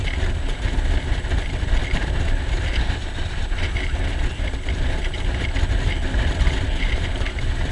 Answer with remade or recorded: recorded